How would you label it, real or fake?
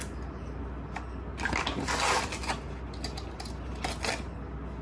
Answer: real